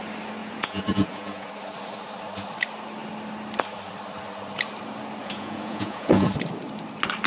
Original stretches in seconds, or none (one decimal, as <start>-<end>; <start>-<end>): 0.0-0.4; 1.5-5.2; 6.3-7.3